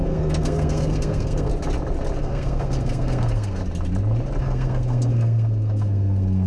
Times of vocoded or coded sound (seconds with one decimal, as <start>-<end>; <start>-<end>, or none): 0.0-1.5; 2.2-3.6; 4.4-6.5